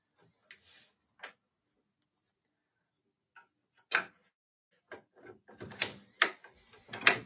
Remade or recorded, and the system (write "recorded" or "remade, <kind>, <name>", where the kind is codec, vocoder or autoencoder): recorded